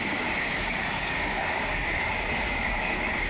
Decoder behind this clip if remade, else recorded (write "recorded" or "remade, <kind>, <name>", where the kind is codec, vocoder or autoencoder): remade, codec, DAC